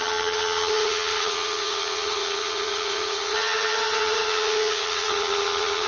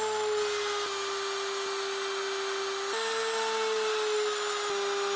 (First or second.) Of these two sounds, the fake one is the first